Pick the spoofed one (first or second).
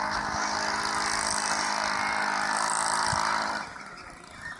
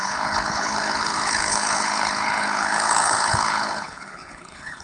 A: second